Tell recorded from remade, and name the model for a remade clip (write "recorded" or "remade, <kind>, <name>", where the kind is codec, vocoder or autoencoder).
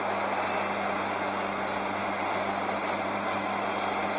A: recorded